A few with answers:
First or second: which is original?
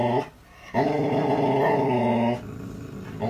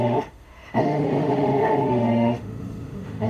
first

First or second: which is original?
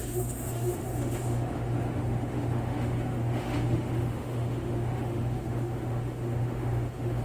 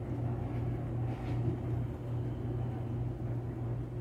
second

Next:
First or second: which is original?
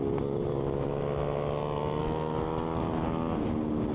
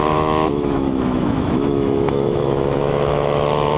first